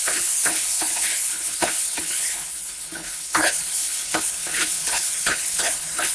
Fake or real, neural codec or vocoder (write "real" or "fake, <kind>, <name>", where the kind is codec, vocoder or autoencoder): fake, codec, HILCodec